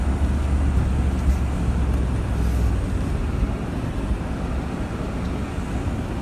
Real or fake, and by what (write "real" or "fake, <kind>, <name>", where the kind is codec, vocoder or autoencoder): real